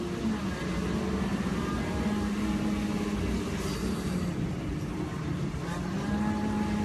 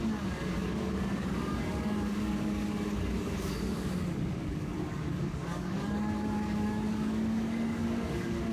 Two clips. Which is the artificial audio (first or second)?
second